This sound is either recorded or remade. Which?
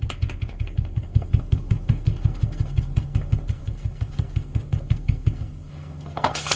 remade